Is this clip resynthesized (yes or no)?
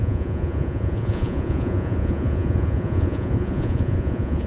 yes